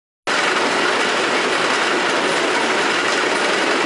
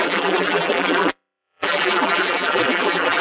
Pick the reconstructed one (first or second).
second